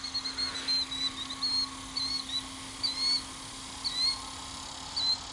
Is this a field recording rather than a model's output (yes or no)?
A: yes